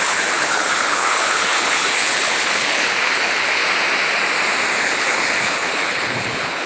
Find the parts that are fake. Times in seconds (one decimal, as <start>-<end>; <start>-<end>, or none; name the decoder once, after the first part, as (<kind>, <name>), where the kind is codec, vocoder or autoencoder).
0.0-3.6 (codec, HILCodec); 4.8-6.7